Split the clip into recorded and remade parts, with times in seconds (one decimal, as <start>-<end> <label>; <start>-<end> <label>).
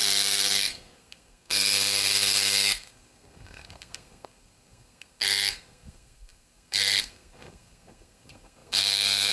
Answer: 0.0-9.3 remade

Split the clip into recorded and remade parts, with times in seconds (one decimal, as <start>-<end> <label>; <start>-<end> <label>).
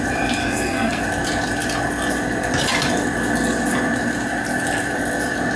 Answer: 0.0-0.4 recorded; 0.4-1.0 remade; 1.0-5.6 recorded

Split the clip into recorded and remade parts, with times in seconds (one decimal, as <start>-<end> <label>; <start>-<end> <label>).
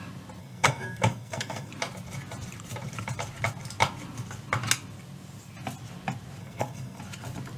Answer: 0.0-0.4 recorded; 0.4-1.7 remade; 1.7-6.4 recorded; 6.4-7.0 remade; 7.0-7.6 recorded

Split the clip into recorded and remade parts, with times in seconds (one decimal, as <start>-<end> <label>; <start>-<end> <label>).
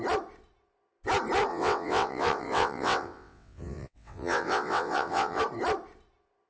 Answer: 0.0-1.5 recorded; 1.5-5.4 remade; 5.4-6.5 recorded